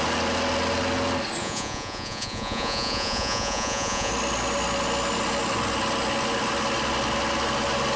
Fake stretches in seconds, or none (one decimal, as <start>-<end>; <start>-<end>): 1.4-4.1